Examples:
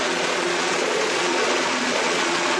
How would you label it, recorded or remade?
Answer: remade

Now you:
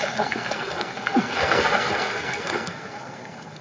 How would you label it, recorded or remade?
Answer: remade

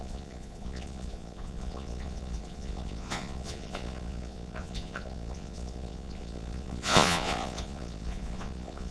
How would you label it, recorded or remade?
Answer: remade